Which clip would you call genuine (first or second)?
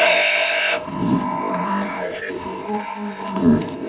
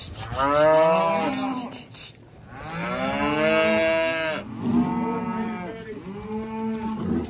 second